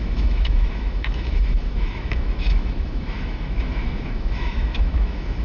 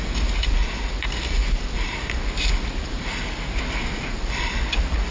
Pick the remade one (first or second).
first